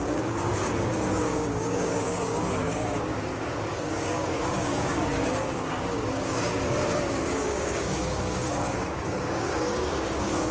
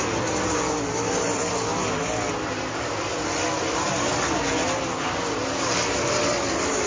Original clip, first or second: second